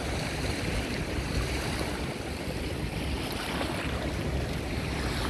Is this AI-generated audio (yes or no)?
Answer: no